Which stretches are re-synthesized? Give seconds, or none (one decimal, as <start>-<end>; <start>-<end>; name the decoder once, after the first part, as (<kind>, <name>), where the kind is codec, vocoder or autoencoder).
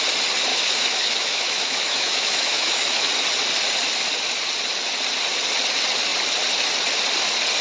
0.5-3.1 (autoencoder, DAC-VAE)